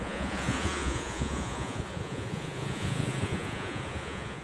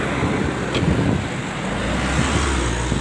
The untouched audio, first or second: second